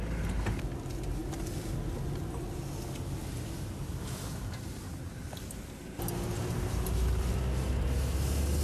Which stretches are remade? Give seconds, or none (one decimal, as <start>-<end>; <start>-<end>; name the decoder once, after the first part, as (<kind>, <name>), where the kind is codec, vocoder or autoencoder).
none